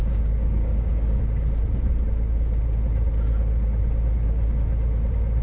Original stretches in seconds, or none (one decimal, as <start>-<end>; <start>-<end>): 1.2-5.4